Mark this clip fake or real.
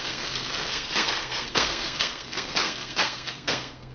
fake